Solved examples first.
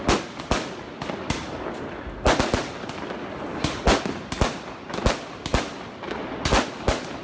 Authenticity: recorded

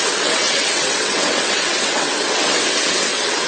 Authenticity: remade